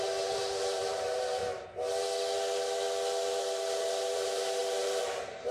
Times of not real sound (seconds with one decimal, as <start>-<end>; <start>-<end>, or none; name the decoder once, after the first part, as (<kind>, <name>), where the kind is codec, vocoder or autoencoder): 0.0-1.4 (vocoder, BigVGAN v2); 3.4-5.5